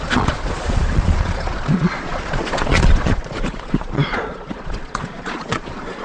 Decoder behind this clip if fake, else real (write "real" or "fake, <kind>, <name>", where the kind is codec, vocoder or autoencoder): fake, vocoder, Vocos